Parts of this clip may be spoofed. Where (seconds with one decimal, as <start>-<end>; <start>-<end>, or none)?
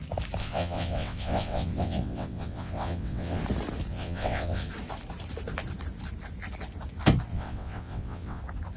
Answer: 0.4-3.4; 3.9-4.7; 7.3-8.4